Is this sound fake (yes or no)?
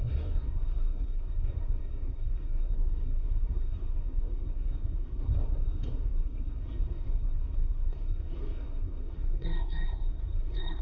yes